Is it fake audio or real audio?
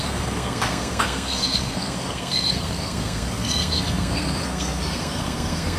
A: fake